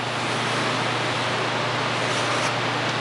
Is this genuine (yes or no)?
yes